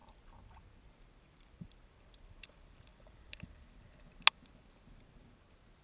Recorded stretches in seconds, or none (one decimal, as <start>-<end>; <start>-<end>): 0.0-5.8